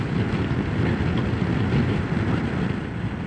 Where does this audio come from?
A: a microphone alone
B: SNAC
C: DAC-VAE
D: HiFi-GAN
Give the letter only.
A